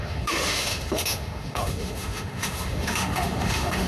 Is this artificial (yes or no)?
yes